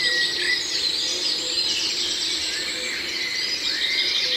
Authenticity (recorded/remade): recorded